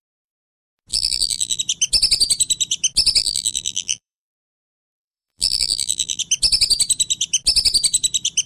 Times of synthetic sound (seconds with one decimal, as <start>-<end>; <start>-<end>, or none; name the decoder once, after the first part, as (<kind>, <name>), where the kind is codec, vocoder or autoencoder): 0.9-1.6 (vocoder, BigVGAN v2); 3.2-6.2